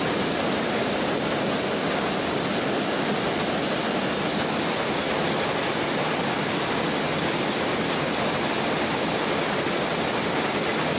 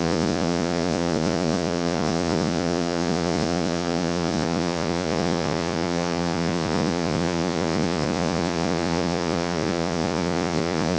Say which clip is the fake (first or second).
second